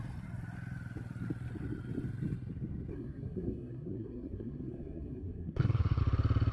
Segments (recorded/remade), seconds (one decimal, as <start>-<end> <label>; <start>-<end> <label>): 0.0-2.9 recorded; 2.9-6.0 remade; 6.0-6.5 recorded